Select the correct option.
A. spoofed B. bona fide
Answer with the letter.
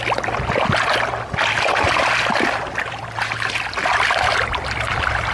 B